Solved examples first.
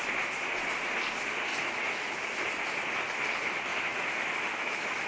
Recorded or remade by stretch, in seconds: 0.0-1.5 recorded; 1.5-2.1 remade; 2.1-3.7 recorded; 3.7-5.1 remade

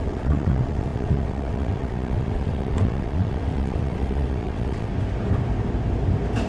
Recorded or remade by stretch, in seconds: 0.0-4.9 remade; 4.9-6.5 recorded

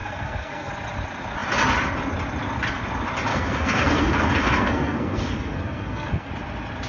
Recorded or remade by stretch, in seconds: 0.0-0.7 remade; 0.7-3.3 recorded; 3.3-6.3 remade; 6.3-6.9 recorded

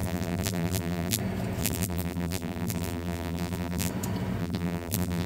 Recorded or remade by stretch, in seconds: 0.0-1.2 remade; 1.2-1.6 recorded; 1.6-3.9 remade; 3.9-4.4 recorded; 4.4-5.3 remade

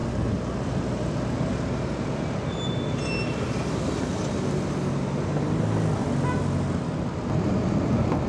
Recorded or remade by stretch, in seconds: 0.0-8.3 recorded

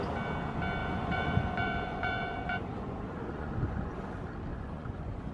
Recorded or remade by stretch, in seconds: 0.0-0.8 recorded; 0.8-4.0 remade; 4.0-4.5 recorded; 4.5-5.3 remade

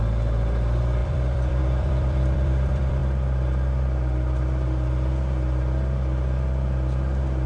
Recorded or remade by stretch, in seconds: 0.0-3.0 remade; 3.0-7.5 recorded

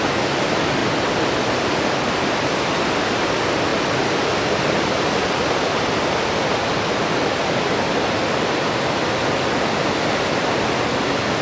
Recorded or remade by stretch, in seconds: 0.0-11.4 recorded